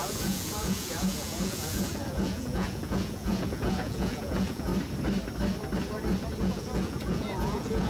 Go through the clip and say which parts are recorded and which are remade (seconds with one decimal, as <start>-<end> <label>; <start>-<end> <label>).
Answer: 0.0-4.7 remade; 4.7-6.4 recorded; 6.4-7.9 remade